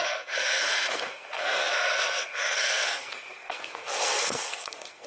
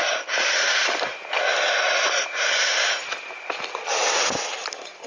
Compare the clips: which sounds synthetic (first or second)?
first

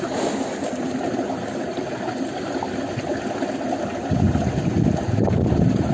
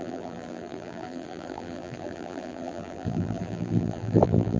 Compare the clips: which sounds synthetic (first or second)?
second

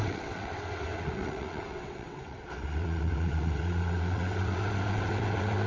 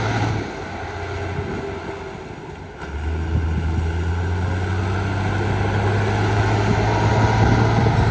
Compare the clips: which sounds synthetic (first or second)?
first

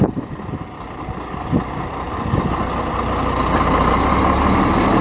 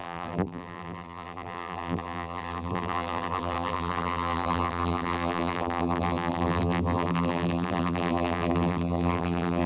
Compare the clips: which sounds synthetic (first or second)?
second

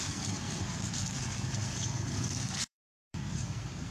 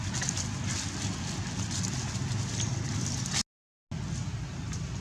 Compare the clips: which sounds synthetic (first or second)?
first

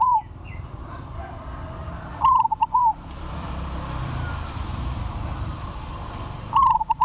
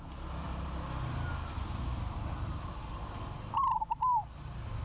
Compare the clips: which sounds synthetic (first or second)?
first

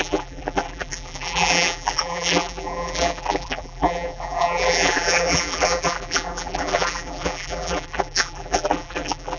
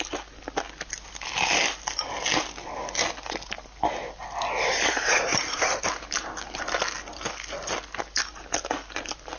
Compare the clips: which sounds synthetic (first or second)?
first